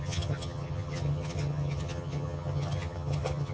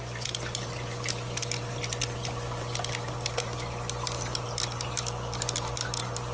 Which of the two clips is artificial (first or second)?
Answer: first